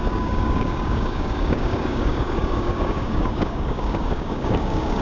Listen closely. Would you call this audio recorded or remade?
remade